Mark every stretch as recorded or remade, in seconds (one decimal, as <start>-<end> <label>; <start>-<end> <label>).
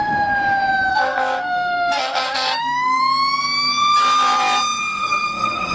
0.0-0.9 recorded; 0.9-3.0 remade; 3.0-5.0 recorded; 5.0-5.7 remade